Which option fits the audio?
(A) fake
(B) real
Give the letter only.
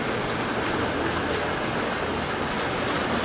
B